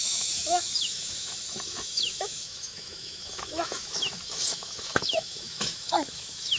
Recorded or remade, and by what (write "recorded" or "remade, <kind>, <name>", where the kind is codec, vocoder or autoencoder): remade, autoencoder, DAC-VAE